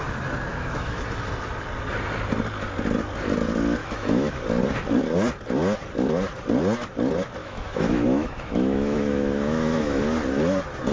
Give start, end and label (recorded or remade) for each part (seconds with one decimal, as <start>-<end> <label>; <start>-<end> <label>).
0.0-0.5 recorded; 0.5-1.0 remade; 1.0-3.8 recorded; 3.8-4.4 remade; 4.4-7.4 recorded; 7.4-10.0 remade; 10.0-10.9 recorded